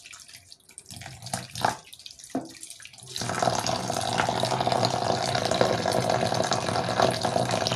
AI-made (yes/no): no